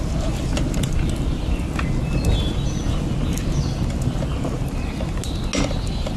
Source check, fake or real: real